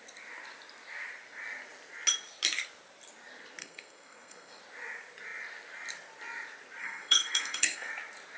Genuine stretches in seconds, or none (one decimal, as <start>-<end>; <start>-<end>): 0.0-3.6; 4.6-6.8; 7.9-8.4